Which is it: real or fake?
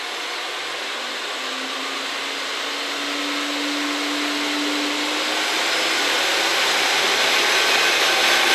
real